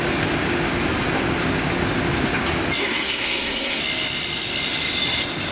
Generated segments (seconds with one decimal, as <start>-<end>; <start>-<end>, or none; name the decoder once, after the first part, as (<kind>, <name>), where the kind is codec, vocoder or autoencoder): 2.8-3.8 (codec, SNAC)